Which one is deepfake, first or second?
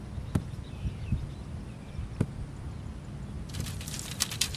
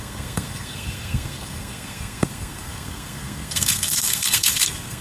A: second